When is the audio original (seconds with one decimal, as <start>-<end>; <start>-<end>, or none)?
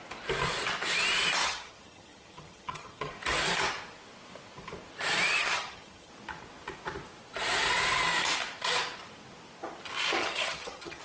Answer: 0.0-1.4; 3.1-5.4; 6.1-10.2